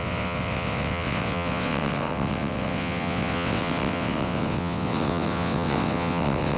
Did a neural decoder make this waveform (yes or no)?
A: yes